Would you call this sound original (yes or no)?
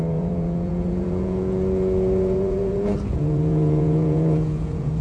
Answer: no